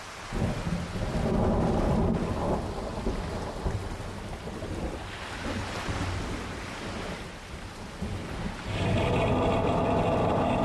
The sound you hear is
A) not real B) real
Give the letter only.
B